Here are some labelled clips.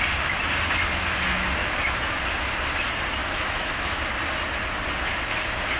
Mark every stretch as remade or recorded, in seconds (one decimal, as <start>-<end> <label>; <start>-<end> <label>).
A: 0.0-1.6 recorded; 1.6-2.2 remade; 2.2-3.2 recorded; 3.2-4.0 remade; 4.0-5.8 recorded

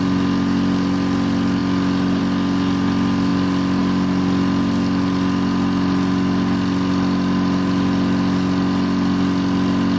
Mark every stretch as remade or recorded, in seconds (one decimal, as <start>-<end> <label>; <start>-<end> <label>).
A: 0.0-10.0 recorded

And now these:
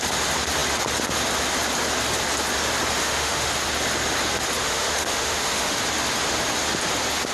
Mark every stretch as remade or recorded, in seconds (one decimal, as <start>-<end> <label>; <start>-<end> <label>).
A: 0.0-3.0 recorded; 3.0-3.5 remade; 3.5-4.6 recorded; 4.6-5.8 remade; 5.8-7.3 recorded

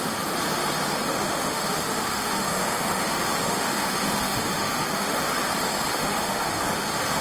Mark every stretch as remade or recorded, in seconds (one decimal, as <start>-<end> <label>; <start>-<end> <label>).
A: 0.0-1.1 recorded; 1.1-5.3 remade; 5.3-5.9 recorded; 5.9-7.2 remade